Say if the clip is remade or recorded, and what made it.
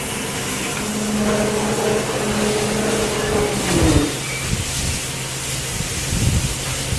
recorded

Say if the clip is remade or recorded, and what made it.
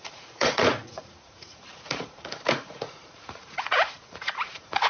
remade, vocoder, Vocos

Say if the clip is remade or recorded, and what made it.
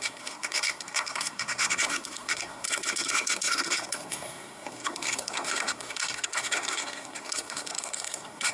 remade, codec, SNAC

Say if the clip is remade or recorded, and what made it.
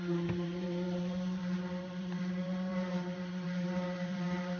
remade, vocoder, BigVGAN v2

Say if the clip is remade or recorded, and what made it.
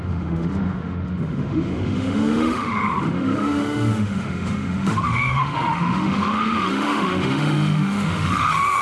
remade, autoencoder, DAC-VAE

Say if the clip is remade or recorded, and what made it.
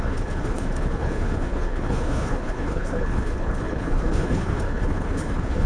remade, codec, HILCodec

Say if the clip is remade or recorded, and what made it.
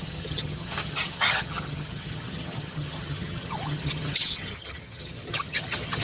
remade, vocoder, HiFi-GAN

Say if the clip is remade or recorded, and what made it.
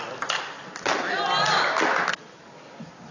recorded